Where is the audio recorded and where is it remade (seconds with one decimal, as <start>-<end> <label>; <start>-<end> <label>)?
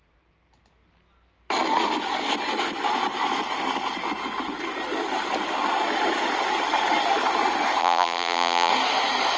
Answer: 0.0-7.8 recorded; 7.8-8.7 remade; 8.7-9.4 recorded